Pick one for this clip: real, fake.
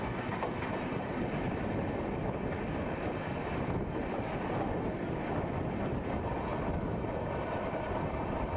real